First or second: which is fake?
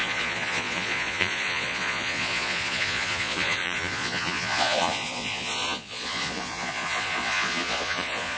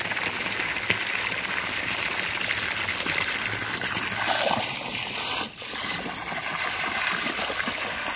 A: first